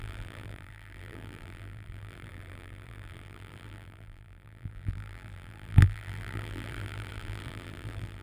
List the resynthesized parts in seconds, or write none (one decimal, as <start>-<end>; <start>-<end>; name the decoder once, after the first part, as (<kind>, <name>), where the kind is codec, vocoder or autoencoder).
0.0-8.2 (vocoder, BigVGAN v2)